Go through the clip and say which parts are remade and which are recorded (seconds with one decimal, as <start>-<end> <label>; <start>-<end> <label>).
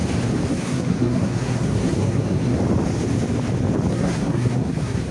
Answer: 0.0-0.5 recorded; 0.5-2.6 remade; 2.6-3.9 recorded; 3.9-5.1 remade